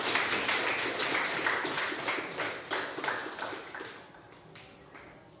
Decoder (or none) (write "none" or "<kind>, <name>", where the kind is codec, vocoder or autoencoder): none